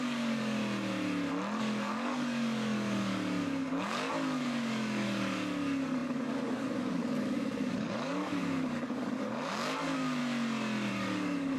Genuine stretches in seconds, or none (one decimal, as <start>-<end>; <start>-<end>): 0.6-1.6; 10.2-10.9